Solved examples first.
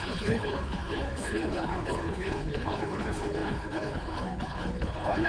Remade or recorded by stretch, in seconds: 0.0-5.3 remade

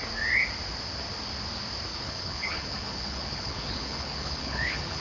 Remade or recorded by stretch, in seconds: 0.0-1.9 recorded; 1.9-5.0 remade

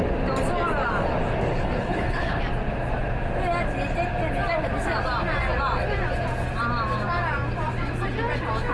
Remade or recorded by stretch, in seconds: 0.0-1.5 recorded; 1.5-2.4 remade; 2.4-8.7 recorded

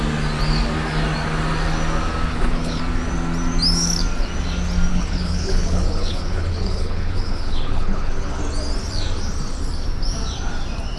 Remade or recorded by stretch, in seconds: 0.0-2.3 recorded; 2.3-2.8 remade; 2.8-4.9 recorded; 4.9-8.4 remade; 8.4-11.0 recorded

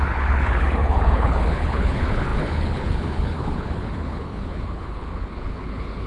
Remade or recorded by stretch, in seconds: 0.0-6.1 remade

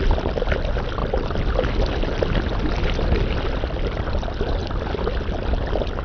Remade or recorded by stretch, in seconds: 0.0-6.0 recorded

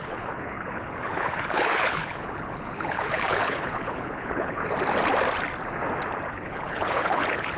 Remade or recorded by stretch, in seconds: 0.0-4.6 remade; 4.6-6.3 recorded; 6.3-7.6 remade

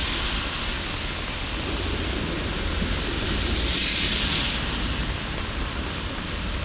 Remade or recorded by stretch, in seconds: 0.0-6.6 recorded